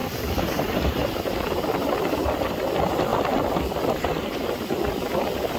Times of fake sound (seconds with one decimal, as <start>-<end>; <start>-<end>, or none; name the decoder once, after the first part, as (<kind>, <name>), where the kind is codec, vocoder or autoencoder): 0.6-1.0 (vocoder, BigVGAN v2); 2.5-5.6